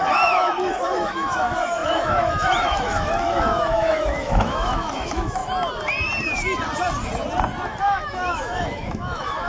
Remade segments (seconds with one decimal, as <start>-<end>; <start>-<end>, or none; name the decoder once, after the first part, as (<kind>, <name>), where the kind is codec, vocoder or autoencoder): 0.0-5.4 (autoencoder, DAC-VAE); 7.8-9.5